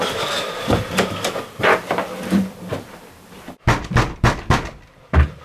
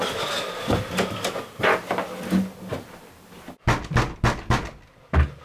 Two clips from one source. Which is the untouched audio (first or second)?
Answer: second